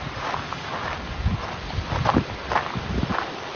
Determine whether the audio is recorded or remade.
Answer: recorded